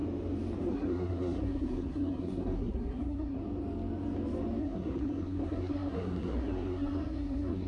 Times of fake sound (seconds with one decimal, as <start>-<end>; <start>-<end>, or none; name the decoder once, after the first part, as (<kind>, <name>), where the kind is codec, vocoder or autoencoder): 0.7-3.4 (codec, SNAC); 4.6-7.7

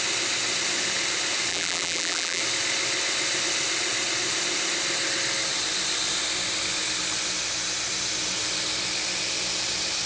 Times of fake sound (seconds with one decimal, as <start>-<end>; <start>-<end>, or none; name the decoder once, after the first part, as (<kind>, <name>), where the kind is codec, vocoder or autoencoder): 1.5-2.4 (vocoder, BigVGAN v2)

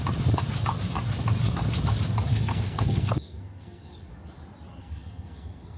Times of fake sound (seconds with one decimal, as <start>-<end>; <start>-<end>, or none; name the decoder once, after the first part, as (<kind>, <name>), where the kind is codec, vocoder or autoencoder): 2.3-4.1 (codec, SNAC); 4.8-5.8

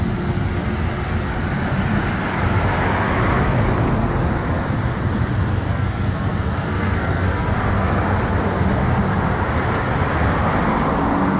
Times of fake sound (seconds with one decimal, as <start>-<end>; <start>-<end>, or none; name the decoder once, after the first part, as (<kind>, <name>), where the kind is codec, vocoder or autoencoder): 5.7-8.0 (codec, SNAC)

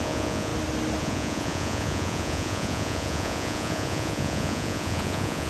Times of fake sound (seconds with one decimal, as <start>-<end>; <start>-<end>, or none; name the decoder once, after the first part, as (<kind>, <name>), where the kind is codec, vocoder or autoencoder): 0.0-0.5 (vocoder, Vocos); 1.0-5.5

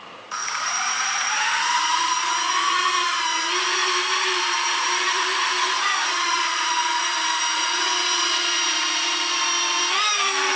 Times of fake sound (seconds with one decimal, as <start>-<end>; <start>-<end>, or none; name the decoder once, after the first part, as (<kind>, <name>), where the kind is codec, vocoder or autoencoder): 0.4-2.3 (vocoder, BigVGAN v2); 3.8-6.7

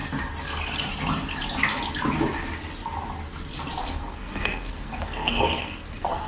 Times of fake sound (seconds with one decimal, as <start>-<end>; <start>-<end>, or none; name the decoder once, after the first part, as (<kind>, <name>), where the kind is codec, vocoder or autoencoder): 3.8-6.3 (codec, SNAC)